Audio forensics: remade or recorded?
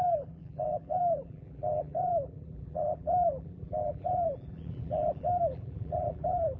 remade